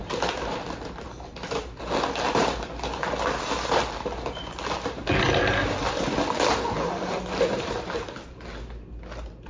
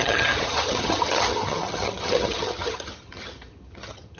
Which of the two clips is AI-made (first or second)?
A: second